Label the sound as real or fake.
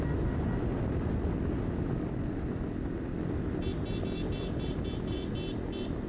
real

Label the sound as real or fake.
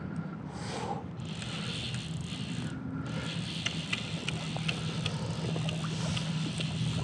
real